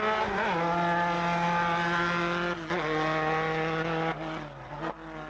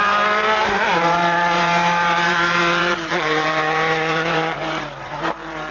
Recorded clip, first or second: first